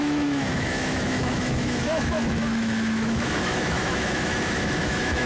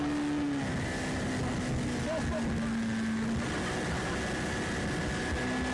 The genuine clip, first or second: second